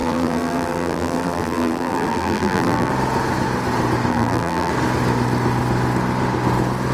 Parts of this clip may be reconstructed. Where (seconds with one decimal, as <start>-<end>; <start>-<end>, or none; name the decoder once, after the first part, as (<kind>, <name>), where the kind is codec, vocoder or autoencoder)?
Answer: 0.0-2.9 (vocoder, BigVGAN v2); 4.1-4.7